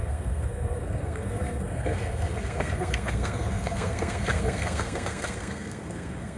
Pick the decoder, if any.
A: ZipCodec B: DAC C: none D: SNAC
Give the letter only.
D